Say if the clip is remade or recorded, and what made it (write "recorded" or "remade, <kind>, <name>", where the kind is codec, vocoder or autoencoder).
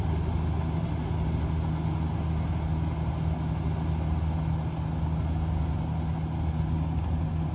recorded